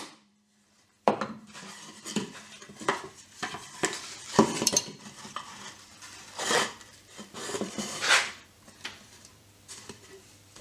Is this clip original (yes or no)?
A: no